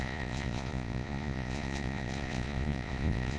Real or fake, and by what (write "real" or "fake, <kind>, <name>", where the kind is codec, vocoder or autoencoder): fake, vocoder, Vocos